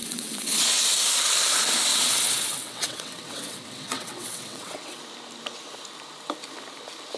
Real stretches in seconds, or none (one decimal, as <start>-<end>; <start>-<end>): 0.8-1.9; 5.0-7.2